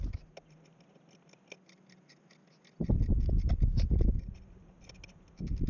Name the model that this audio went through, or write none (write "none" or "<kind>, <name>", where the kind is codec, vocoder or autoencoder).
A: none